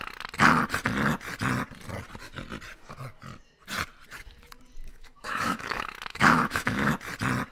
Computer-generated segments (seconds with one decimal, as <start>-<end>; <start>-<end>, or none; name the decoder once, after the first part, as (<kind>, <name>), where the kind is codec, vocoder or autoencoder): 4.9-6.9 (autoencoder, DAC-VAE)